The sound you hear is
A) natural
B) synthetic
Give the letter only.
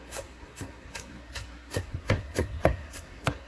B